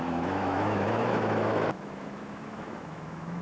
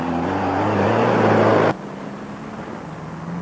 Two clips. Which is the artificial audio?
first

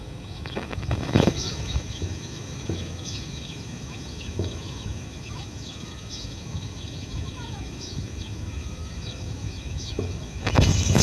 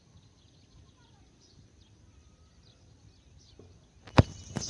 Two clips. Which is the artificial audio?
first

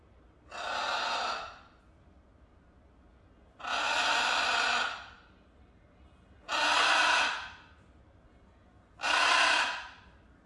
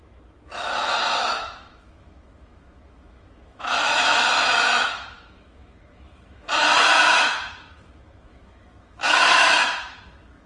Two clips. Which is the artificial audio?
second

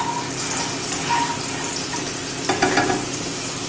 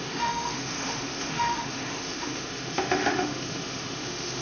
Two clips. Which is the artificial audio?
second